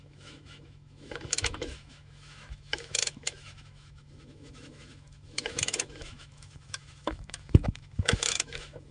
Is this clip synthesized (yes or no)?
yes